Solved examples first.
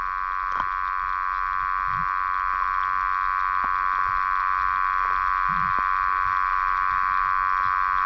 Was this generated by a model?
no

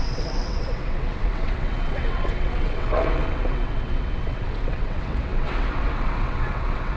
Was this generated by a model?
yes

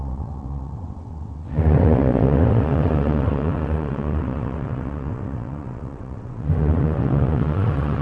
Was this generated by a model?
yes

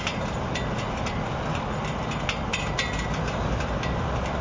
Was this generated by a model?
no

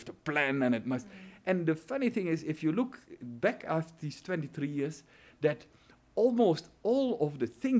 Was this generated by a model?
no